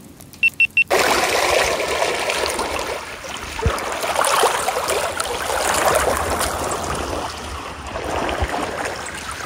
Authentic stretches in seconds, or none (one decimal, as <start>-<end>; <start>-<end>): 0.0-9.5